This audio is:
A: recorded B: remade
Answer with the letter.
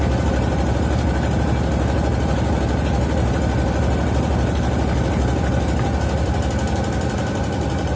A